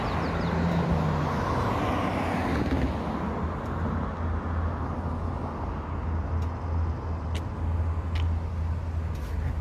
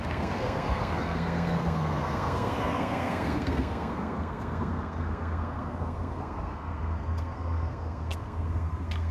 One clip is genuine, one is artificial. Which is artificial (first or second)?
second